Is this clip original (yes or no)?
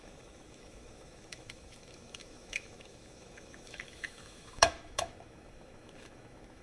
no